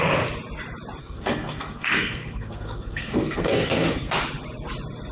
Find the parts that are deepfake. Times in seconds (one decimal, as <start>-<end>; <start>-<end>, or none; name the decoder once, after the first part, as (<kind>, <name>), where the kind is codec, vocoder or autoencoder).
1.0-4.1 (codec, SNAC)